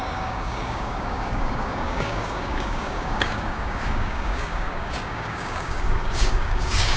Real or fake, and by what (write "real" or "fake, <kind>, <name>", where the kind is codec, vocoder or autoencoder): fake, codec, DAC